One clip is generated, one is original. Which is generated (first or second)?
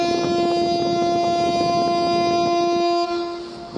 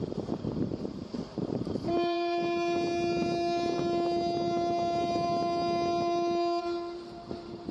second